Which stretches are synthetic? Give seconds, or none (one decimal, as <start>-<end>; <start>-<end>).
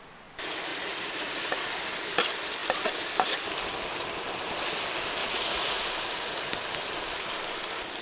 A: 0.7-1.7; 5.2-6.5